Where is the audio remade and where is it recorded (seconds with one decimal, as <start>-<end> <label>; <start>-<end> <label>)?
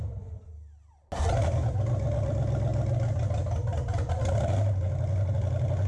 0.0-2.7 recorded; 2.7-4.2 remade; 4.2-5.9 recorded